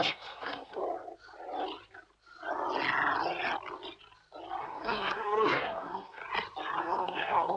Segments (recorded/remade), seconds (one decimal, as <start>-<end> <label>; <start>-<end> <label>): 0.0-0.8 remade; 0.8-4.6 recorded; 4.6-6.2 remade; 6.2-6.8 recorded; 6.8-7.6 remade